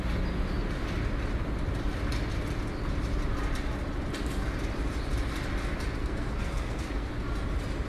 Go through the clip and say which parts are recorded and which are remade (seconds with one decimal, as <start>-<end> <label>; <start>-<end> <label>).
0.0-6.0 recorded; 6.0-7.1 remade; 7.1-7.9 recorded